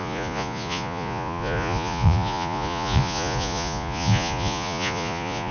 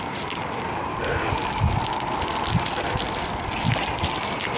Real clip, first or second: second